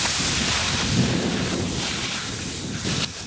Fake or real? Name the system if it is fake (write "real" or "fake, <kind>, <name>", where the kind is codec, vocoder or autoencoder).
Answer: real